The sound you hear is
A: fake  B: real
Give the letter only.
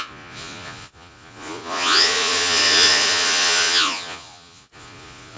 A